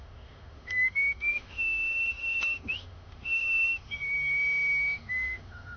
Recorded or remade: remade